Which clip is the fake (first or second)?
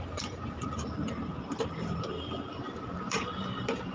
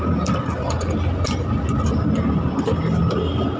first